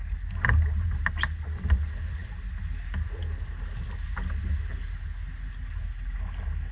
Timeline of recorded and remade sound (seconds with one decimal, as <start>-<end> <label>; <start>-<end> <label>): 0.0-6.7 recorded